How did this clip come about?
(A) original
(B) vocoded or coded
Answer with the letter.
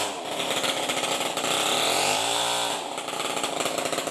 A